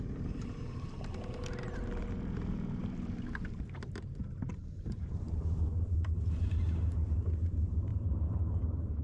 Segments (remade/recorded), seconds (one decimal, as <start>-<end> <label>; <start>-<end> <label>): 0.0-9.0 remade